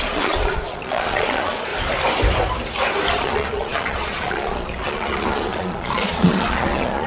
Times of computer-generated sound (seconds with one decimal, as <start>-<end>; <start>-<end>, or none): 0.0-1.7; 3.1-7.1